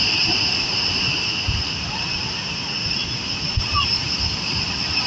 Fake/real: real